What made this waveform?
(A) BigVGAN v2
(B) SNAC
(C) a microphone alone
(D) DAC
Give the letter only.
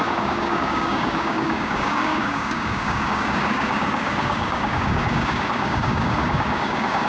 D